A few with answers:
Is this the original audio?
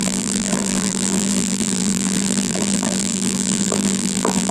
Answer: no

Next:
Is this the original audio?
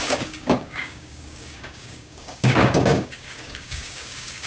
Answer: no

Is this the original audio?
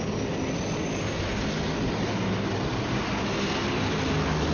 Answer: yes